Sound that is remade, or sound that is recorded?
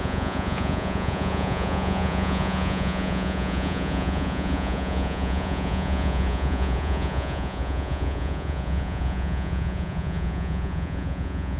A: remade